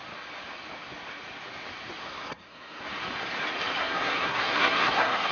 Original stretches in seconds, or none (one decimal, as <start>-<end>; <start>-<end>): 0.0-2.0; 2.8-3.8